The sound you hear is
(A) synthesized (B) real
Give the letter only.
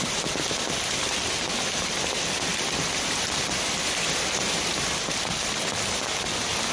B